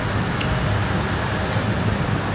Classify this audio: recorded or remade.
recorded